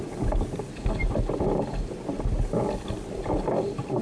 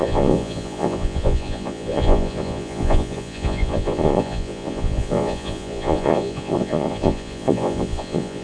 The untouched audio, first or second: first